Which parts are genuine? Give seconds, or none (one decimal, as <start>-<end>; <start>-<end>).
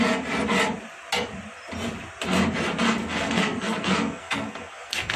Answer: 0.0-3.0